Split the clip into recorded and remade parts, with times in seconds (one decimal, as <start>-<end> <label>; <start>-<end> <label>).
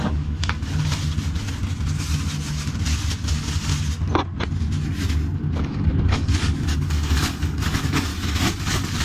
0.0-0.8 remade; 0.8-3.3 recorded; 3.3-3.7 remade; 3.7-5.6 recorded; 5.6-8.1 remade; 8.1-8.6 recorded; 8.6-9.0 remade